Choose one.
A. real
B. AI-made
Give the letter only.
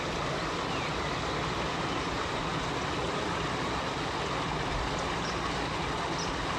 A